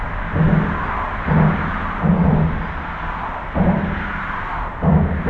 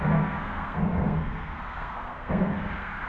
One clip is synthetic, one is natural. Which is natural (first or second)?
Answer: first